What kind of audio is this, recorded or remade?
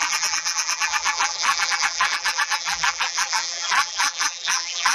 remade